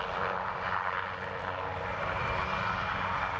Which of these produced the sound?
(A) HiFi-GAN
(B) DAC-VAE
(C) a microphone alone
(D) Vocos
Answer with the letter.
C